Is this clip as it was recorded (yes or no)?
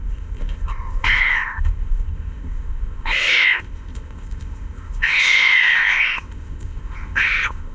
no